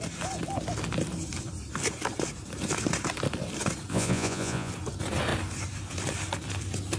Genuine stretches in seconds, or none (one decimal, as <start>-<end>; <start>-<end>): 0.0-3.9; 4.7-7.0